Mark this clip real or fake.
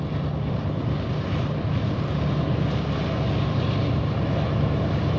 real